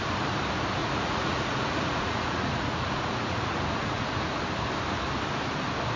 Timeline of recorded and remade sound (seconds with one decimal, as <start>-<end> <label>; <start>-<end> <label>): 0.0-0.8 recorded; 0.8-4.4 remade; 4.4-6.0 recorded